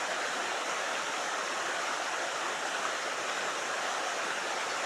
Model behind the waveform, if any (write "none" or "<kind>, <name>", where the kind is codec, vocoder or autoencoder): none